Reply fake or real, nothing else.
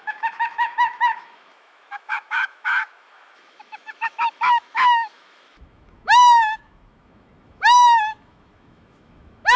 fake